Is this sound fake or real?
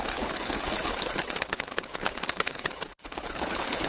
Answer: fake